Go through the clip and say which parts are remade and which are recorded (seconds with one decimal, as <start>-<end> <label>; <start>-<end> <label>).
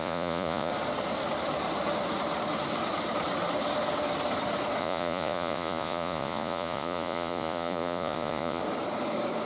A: 0.0-0.7 remade; 0.7-4.8 recorded; 4.8-8.6 remade; 8.6-9.5 recorded